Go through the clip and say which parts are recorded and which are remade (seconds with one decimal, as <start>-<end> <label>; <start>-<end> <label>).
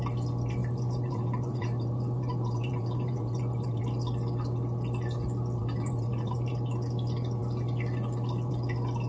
0.0-0.6 recorded; 0.6-3.8 remade; 3.8-5.6 recorded; 5.6-6.5 remade; 6.5-9.1 recorded